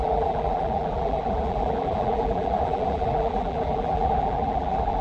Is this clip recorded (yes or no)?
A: no